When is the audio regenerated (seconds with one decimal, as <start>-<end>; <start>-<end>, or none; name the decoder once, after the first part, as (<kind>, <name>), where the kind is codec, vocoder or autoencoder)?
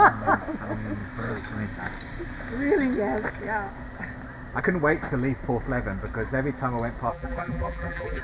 7.1-8.2 (vocoder, BigVGAN v2)